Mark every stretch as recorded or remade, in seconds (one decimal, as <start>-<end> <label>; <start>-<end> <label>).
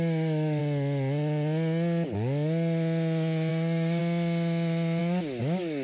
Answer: 0.0-0.6 remade; 0.6-3.5 recorded; 3.5-4.0 remade; 4.0-5.0 recorded; 5.0-5.8 remade